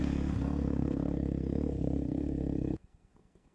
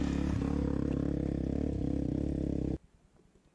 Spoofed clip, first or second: first